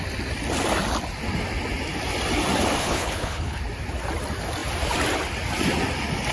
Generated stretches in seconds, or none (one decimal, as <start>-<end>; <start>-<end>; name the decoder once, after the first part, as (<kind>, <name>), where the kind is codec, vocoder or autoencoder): 2.8-3.6 (codec, HILCodec)

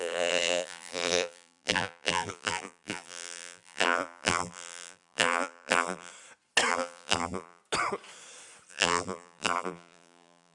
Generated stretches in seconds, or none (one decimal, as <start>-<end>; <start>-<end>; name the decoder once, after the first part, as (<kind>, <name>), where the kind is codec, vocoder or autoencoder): 0.0-6.1 (vocoder, BigVGAN v2); 6.7-7.6; 8.7-10.5

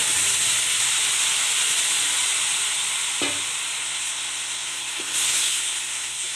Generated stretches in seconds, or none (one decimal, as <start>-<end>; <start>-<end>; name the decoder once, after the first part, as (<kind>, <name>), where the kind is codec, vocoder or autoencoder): 3.8-6.4 (codec, SNAC)

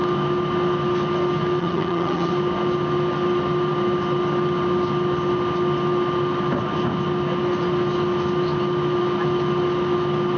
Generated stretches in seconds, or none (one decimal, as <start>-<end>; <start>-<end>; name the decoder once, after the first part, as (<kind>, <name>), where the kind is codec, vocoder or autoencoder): 1.6-2.3 (vocoder, HiFi-GAN)

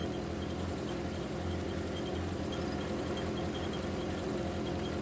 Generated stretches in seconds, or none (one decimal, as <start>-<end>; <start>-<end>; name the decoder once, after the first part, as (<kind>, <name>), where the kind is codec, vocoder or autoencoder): none